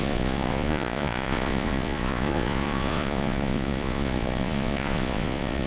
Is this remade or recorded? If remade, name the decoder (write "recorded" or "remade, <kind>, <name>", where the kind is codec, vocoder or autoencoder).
remade, vocoder, Vocos